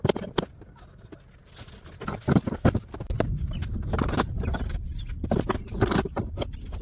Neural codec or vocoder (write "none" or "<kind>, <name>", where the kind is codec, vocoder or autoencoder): none